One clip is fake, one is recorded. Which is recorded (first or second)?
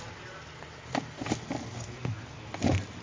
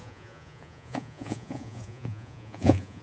first